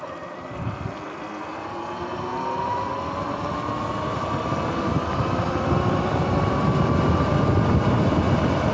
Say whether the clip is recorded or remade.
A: recorded